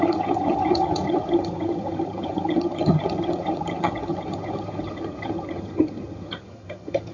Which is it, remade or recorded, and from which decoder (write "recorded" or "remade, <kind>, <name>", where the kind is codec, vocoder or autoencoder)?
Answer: remade, vocoder, HiFi-GAN